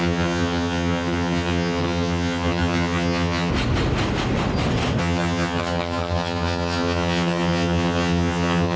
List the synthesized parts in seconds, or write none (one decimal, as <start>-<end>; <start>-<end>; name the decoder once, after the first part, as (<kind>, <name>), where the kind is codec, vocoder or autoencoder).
0.0-3.5 (vocoder, HiFi-GAN); 5.0-8.8